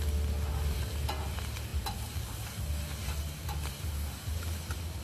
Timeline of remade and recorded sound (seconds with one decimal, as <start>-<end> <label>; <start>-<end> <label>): 0.0-5.0 recorded